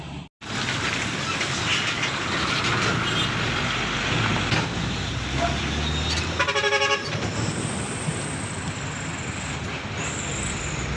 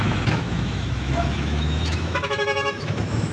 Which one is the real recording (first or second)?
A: first